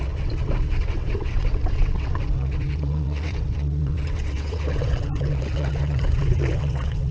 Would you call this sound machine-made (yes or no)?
yes